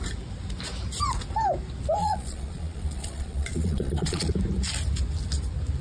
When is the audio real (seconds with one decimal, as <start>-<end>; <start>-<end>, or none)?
0.0-2.0; 4.3-5.8